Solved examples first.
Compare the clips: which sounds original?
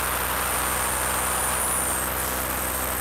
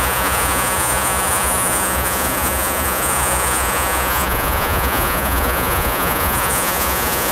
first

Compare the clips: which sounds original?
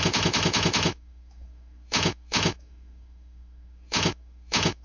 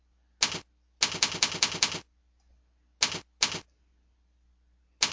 second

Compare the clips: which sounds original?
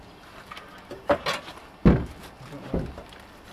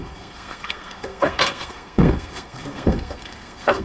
first